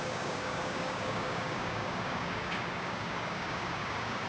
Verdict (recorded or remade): remade